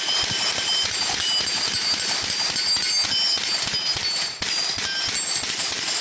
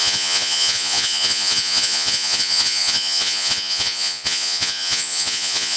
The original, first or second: first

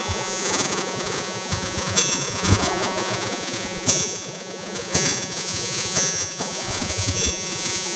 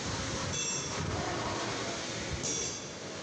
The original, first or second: second